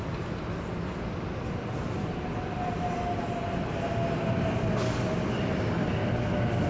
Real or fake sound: real